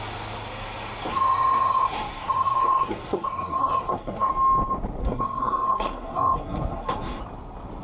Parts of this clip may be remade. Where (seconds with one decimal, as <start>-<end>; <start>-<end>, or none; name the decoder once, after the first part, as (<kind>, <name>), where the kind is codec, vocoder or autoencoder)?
1.1-4.3 (codec, SNAC); 5.0-7.2